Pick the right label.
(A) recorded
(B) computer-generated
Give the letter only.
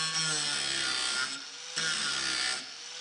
A